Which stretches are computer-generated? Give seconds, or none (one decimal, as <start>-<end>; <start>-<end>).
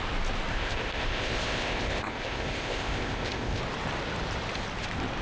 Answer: 0.5-3.6